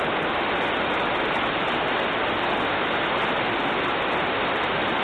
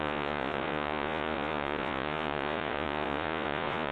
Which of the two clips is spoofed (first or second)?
second